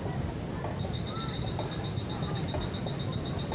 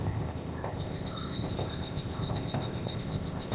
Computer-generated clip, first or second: second